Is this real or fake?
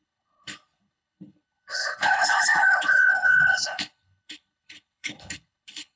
fake